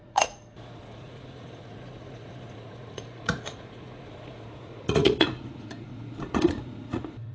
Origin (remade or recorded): remade